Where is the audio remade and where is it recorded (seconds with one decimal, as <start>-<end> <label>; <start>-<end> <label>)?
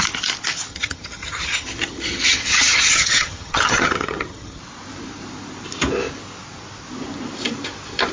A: 0.0-0.7 recorded; 0.7-4.6 remade; 4.6-8.1 recorded